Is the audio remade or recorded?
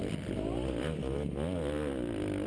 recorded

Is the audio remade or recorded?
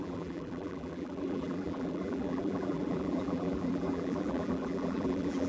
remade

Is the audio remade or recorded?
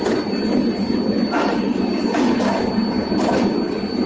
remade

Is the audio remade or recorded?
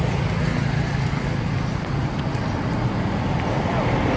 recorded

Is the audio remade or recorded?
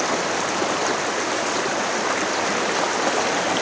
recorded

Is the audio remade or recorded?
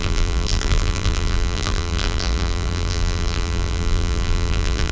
remade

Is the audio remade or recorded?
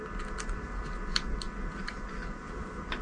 recorded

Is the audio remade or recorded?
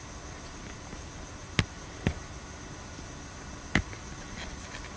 recorded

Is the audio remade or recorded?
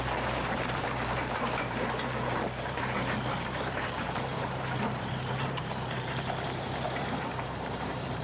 remade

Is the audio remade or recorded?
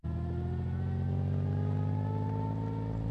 recorded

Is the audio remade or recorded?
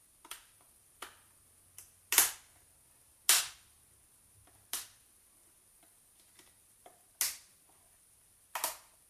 recorded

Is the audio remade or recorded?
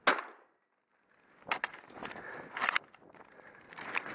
recorded